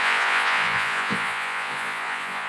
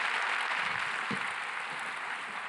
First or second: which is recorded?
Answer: second